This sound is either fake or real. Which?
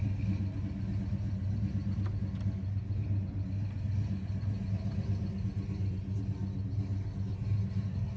real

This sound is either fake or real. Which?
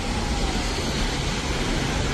real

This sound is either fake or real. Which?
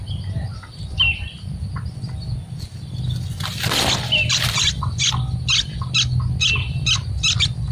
real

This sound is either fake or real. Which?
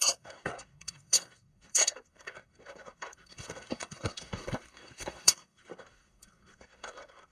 fake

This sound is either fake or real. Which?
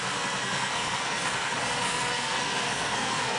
fake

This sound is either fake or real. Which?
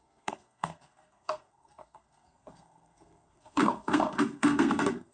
fake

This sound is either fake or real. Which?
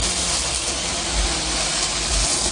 real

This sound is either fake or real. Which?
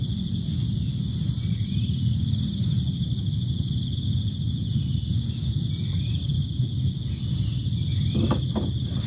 real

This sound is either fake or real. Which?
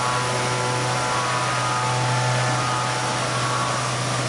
real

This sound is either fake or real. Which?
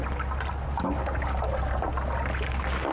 real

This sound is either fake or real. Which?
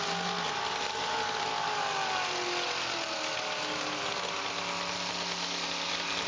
real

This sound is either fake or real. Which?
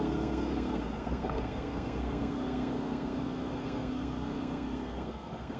fake